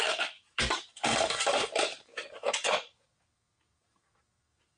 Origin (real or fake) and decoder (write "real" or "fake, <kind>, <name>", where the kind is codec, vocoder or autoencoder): fake, codec, DAC